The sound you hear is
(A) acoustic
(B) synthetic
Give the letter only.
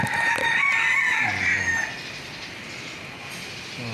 A